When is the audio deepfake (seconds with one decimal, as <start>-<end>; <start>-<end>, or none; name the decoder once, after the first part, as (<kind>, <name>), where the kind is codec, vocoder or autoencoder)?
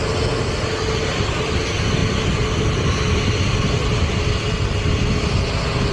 2.0-4.2 (vocoder, BigVGAN v2)